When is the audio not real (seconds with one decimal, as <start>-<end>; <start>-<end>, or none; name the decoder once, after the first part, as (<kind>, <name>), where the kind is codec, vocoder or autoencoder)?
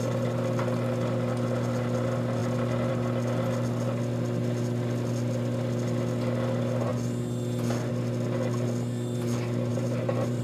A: 9.7-10.4 (vocoder, BigVGAN v2)